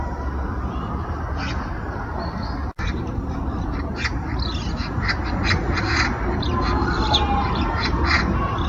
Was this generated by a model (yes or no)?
no